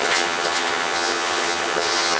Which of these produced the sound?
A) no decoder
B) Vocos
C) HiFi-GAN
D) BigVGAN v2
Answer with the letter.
C